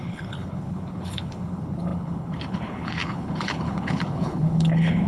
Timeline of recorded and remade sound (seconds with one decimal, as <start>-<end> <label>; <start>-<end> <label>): 0.0-5.1 remade